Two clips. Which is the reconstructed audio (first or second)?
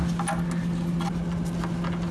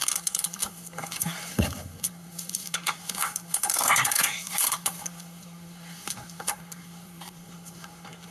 second